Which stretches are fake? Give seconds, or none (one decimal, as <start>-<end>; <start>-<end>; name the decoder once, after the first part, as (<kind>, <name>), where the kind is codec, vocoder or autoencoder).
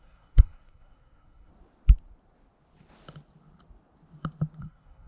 0.0-1.5 (codec, SNAC); 4.6-5.1